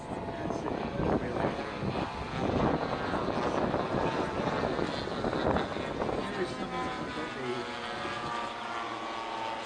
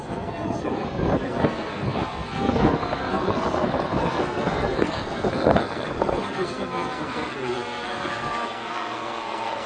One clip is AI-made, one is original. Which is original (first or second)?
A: first